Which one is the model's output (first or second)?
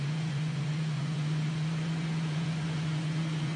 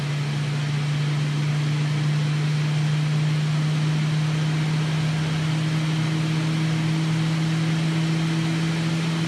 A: first